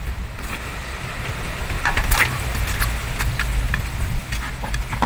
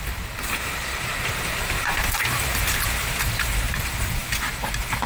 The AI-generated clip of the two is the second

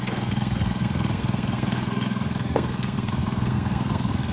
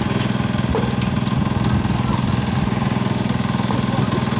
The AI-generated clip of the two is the first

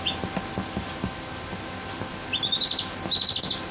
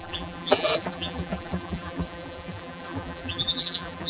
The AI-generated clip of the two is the second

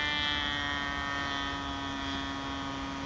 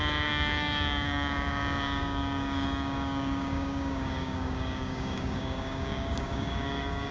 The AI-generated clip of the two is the second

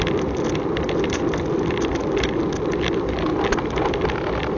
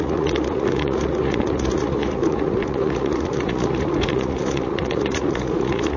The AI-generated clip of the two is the second